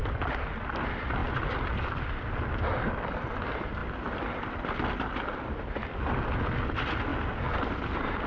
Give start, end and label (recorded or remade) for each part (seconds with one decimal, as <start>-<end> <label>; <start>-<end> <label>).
0.0-0.6 remade; 0.6-3.8 recorded; 3.8-5.7 remade; 5.7-7.1 recorded; 7.1-7.6 remade; 7.6-8.3 recorded